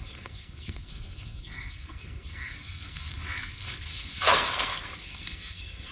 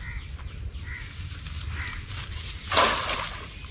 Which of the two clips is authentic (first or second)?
second